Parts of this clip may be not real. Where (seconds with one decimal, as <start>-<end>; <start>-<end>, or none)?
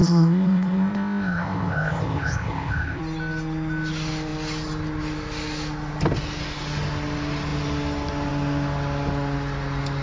0.0-3.0